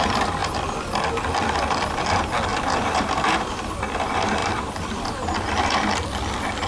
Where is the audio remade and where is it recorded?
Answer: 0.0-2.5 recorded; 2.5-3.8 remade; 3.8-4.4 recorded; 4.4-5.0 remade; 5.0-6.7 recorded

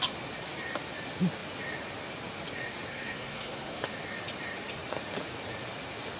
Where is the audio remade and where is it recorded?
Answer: 0.0-2.9 recorded; 2.9-3.8 remade; 3.8-6.2 recorded